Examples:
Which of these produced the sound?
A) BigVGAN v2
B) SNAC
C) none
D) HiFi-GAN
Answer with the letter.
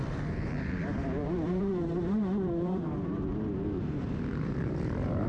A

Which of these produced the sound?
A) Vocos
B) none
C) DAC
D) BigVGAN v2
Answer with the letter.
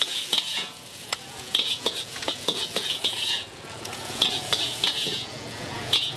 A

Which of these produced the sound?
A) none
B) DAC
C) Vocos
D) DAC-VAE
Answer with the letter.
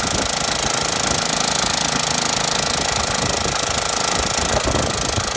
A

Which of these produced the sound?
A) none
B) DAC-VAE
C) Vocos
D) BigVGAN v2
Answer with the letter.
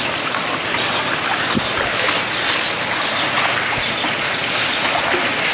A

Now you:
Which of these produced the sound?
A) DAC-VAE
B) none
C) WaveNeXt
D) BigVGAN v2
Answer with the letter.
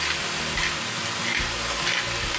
B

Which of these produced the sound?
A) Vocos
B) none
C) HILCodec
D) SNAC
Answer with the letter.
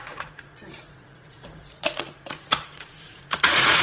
A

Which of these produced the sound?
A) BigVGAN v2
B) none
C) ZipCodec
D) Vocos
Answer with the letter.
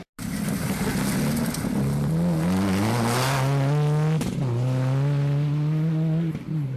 B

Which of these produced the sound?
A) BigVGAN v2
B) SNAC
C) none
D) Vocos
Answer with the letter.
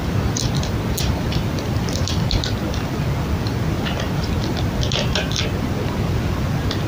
C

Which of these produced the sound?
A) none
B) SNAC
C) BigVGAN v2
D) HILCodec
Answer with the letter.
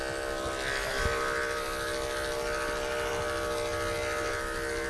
A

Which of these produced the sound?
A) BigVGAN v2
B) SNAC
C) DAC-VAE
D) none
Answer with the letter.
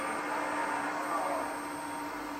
D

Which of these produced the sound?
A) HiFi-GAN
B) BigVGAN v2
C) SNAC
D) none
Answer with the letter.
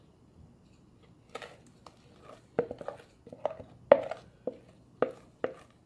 D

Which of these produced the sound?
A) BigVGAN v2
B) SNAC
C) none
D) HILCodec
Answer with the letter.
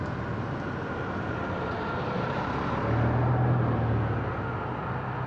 C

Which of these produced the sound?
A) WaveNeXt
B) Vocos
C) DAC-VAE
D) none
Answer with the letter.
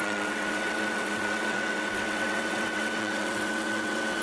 A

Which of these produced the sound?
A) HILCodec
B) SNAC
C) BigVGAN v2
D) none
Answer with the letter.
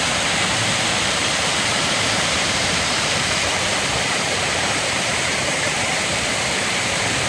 C